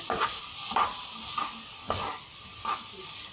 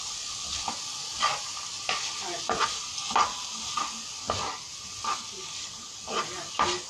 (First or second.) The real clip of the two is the second